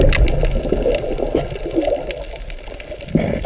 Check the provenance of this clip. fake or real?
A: real